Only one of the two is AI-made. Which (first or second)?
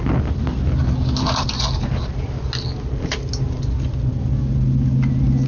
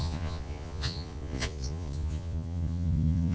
second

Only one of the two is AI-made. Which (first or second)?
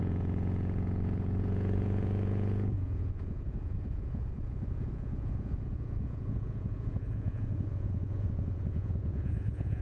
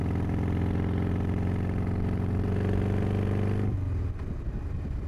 first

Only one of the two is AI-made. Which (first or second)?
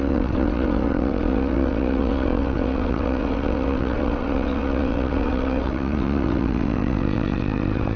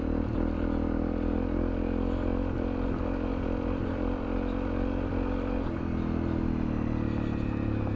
first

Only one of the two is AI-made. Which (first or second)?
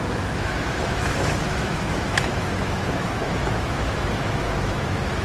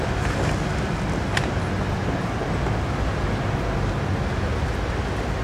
first